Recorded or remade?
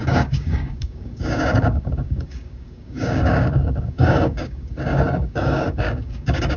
remade